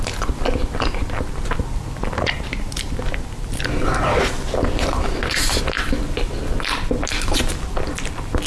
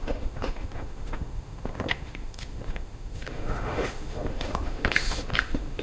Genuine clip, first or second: first